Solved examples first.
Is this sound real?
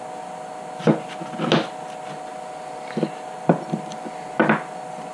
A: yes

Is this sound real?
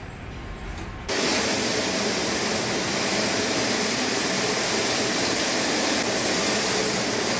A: yes